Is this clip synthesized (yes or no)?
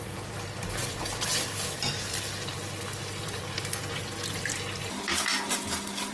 yes